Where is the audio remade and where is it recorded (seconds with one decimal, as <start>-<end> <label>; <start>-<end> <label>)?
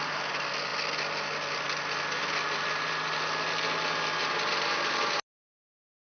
0.0-6.1 recorded